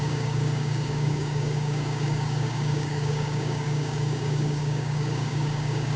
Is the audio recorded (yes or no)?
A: no